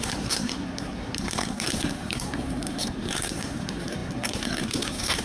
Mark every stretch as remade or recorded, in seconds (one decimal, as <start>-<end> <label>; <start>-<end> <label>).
0.0-5.2 remade